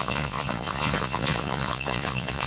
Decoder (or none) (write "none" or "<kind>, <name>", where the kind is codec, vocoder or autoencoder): vocoder, Vocos